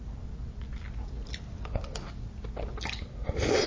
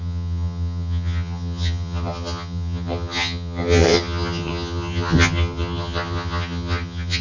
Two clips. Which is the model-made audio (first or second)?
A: second